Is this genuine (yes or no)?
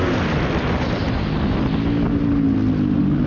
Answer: yes